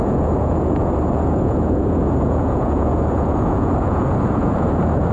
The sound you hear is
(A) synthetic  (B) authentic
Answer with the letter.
A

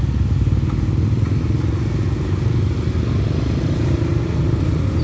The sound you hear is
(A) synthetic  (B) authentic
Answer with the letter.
B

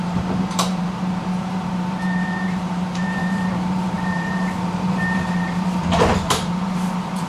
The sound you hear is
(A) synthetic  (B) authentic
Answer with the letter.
A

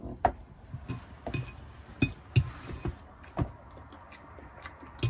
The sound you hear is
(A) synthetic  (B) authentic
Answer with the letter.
B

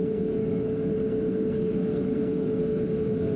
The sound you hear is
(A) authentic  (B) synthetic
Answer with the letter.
B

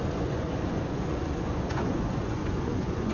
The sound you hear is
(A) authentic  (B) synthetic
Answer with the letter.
B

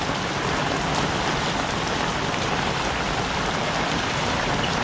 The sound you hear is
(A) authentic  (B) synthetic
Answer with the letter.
B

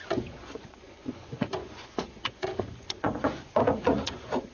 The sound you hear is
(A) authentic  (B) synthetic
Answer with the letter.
B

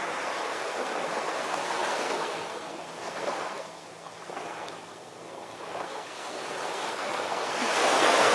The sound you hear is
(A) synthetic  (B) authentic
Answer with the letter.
A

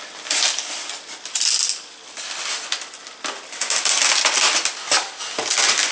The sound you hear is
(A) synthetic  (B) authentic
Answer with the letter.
B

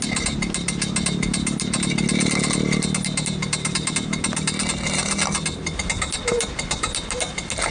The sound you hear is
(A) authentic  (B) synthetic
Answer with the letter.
A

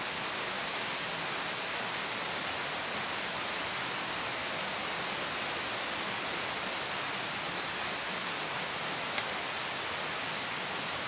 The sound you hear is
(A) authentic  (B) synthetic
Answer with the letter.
A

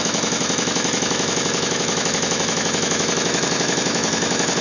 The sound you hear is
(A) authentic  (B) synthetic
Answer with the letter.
B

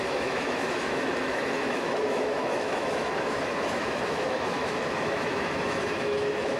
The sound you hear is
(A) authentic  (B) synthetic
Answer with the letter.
B